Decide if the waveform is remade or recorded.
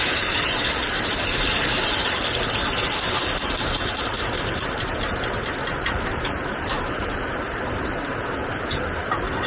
remade